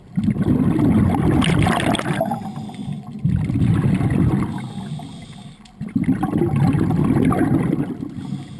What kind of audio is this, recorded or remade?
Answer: recorded